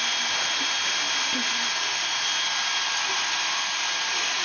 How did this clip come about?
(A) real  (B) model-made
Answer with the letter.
A